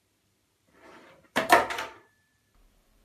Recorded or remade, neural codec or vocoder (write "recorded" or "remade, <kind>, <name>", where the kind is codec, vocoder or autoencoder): remade, vocoder, BigVGAN v2